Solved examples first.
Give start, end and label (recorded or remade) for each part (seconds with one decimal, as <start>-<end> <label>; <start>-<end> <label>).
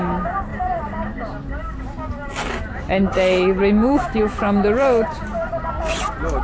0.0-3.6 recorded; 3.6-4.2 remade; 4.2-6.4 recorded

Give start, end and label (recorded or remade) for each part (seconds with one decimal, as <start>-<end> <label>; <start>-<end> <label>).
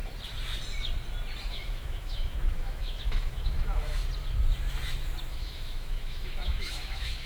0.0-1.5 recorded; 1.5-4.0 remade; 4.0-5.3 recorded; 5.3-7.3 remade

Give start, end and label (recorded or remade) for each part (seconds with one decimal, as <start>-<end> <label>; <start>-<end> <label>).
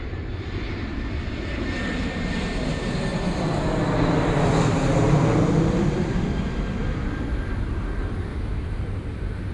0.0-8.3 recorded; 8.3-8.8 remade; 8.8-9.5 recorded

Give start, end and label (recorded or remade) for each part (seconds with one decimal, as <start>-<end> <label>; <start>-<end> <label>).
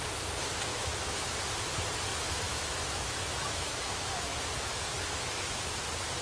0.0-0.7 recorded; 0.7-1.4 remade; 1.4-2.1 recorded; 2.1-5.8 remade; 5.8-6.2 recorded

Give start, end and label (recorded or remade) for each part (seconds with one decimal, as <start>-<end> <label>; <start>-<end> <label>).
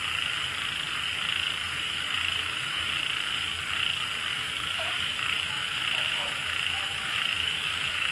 0.0-1.6 recorded; 1.6-2.9 remade; 2.9-4.3 recorded; 4.3-8.1 remade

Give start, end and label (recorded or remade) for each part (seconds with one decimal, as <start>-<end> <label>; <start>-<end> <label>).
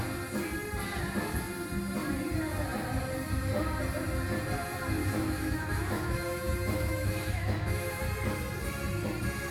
0.0-5.0 recorded; 5.0-8.0 remade; 8.0-9.5 recorded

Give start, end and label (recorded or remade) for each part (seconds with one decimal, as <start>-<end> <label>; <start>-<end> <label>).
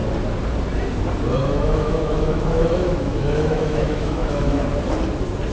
0.0-1.4 recorded; 1.4-4.7 remade; 4.7-5.5 recorded